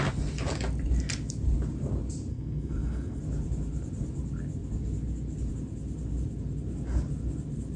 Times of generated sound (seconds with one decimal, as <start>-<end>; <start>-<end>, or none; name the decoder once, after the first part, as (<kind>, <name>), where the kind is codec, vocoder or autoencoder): 2.3-3.2 (codec, SNAC)